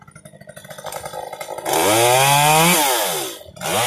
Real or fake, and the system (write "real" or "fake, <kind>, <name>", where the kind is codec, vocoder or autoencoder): real